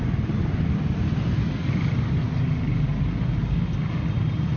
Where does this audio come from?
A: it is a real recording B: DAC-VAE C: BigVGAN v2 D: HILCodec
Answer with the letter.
A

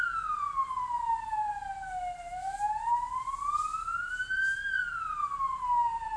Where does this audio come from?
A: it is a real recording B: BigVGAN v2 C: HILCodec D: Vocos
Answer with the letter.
A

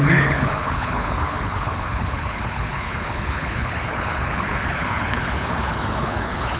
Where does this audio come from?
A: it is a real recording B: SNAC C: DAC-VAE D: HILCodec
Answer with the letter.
D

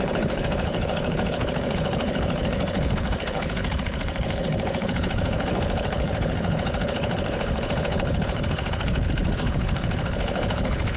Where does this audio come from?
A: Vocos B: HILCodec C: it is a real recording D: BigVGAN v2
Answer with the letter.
B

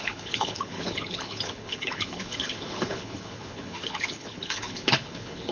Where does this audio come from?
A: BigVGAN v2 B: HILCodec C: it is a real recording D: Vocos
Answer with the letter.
B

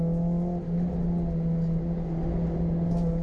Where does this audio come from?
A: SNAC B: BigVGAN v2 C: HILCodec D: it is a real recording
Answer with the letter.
D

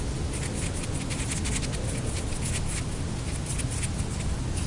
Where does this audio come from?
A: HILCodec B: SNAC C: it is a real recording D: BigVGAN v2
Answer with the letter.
C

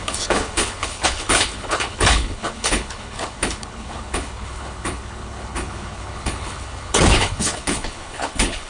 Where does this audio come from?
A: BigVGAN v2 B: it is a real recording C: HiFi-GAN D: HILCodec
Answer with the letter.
D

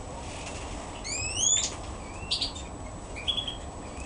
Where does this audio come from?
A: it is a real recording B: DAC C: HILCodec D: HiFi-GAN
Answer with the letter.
A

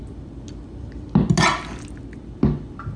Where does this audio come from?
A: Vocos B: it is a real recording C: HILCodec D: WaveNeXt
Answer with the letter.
B